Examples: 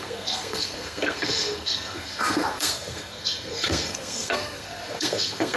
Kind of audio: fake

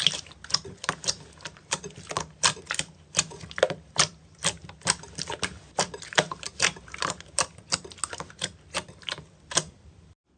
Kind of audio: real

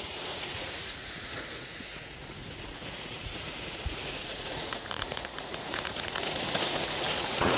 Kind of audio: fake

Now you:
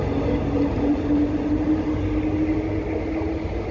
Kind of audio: real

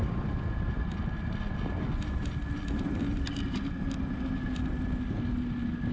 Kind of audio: real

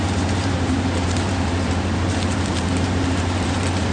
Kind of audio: fake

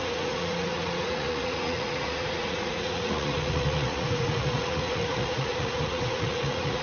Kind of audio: fake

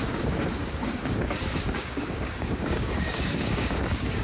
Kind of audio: fake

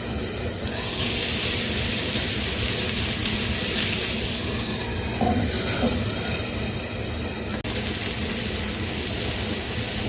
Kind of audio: real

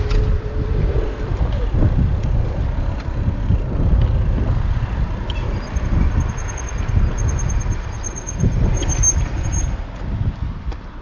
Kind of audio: real